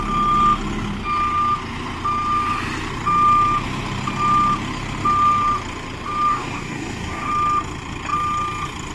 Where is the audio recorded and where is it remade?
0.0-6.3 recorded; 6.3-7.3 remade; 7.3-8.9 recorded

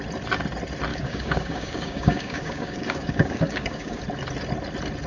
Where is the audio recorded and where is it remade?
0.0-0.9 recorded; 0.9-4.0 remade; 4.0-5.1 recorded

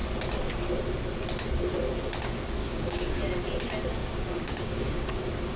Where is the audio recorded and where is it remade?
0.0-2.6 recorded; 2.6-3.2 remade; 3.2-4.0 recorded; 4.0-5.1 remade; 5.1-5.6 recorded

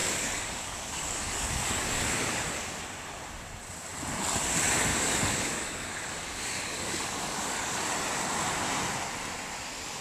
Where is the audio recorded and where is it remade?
0.0-2.8 remade; 2.8-4.9 recorded; 4.9-7.8 remade; 7.8-10.0 recorded